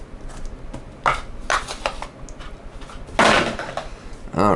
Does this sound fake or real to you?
real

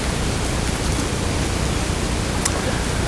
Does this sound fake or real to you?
real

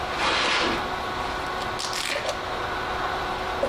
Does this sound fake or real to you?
real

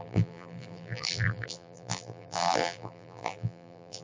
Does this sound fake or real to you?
fake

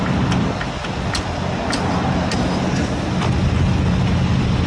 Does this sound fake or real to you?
real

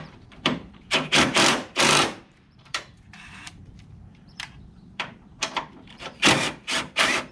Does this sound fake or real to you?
fake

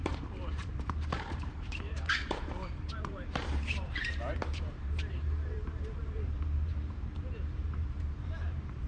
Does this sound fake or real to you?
fake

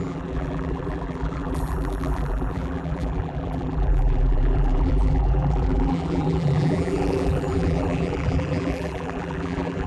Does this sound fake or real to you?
fake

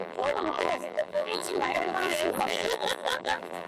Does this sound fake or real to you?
fake